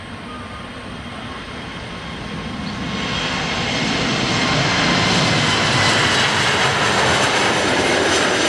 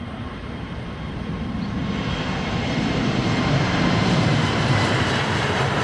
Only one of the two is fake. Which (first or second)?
second